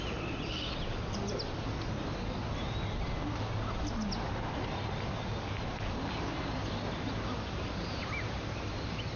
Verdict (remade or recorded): recorded